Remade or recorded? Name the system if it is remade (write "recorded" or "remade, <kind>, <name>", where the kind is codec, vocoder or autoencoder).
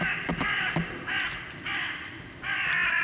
recorded